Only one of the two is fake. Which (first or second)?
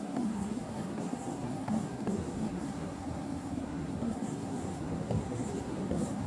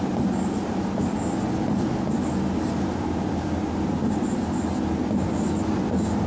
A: first